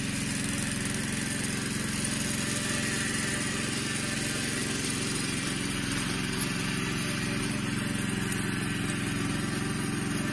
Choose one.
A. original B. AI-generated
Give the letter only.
A